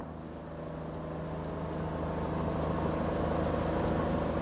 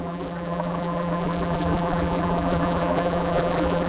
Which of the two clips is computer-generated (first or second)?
second